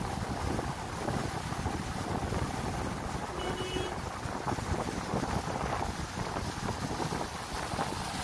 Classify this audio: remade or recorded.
recorded